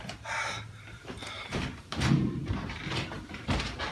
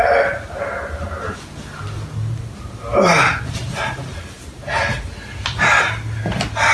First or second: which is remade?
first